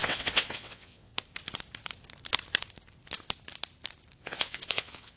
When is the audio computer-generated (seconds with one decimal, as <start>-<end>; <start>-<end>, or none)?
0.0-1.1; 4.2-5.2